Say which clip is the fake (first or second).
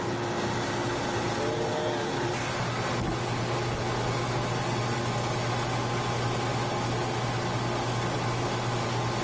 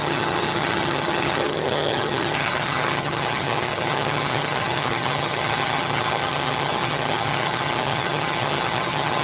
second